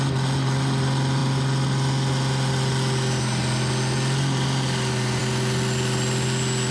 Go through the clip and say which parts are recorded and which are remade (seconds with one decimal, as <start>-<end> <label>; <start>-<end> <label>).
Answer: 0.0-6.7 recorded